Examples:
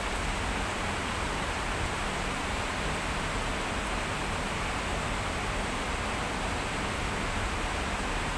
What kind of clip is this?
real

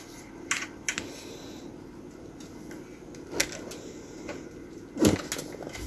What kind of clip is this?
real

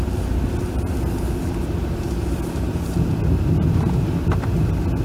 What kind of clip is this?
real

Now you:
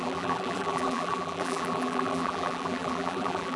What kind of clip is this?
fake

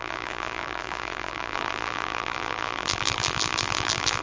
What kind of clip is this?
fake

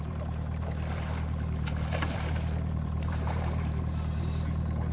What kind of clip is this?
fake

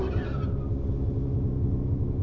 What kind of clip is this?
real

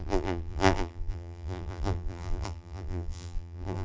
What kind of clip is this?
fake